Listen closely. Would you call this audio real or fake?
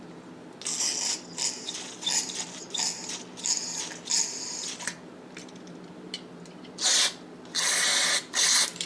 real